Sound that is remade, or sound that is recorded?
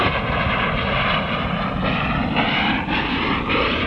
recorded